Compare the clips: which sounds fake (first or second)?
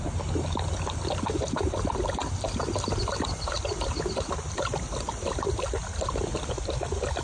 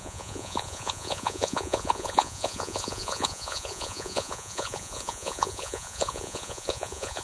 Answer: second